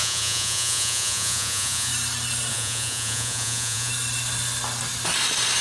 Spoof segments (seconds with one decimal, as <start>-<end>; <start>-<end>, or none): 0.0-1.9; 2.5-3.9